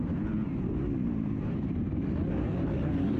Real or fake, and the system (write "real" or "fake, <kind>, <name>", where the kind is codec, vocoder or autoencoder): fake, vocoder, BigVGAN v2